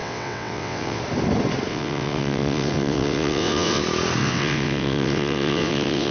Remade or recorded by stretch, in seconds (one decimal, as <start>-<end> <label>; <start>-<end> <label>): 0.0-1.0 remade; 1.0-1.7 recorded; 1.7-3.8 remade; 3.8-4.2 recorded; 4.2-6.1 remade

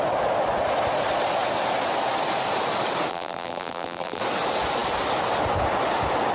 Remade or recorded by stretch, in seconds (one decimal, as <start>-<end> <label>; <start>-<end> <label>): 0.0-3.1 recorded; 3.1-4.2 remade; 4.2-6.3 recorded

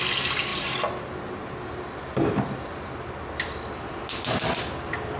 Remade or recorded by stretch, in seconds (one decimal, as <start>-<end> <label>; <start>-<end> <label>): 0.0-5.2 recorded

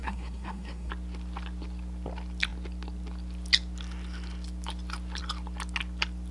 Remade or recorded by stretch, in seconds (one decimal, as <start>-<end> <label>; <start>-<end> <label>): 0.0-0.9 remade; 0.9-6.3 recorded

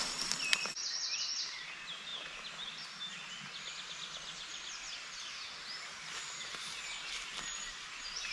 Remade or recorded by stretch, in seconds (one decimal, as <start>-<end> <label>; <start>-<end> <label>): 0.0-8.3 recorded